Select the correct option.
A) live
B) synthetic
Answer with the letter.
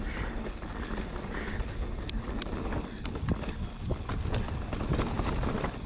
A